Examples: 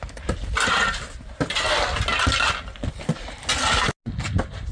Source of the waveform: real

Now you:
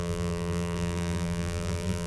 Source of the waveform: fake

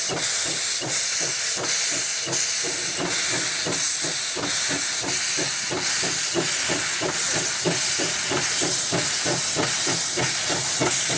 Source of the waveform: real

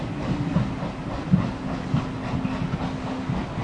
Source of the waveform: real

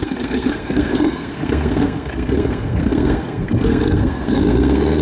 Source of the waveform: fake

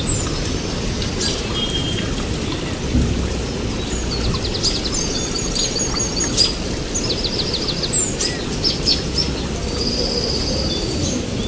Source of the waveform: real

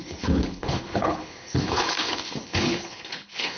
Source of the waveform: fake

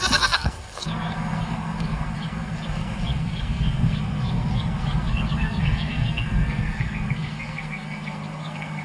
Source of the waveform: fake